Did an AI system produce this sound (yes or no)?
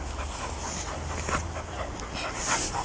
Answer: no